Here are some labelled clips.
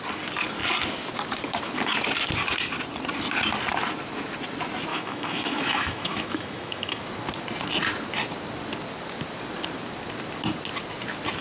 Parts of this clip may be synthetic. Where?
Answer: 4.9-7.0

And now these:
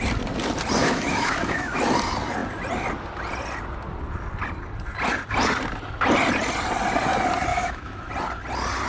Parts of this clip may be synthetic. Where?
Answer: 0.8-1.8; 7.5-8.1

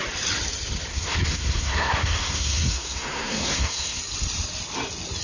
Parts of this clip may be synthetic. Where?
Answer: 0.9-4.0

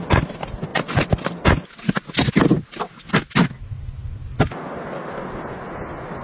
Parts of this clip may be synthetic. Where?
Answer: none

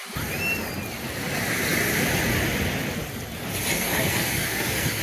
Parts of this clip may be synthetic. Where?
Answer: 3.7-5.0

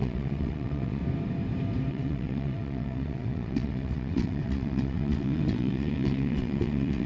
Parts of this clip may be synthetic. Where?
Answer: 0.0-1.0; 1.9-7.1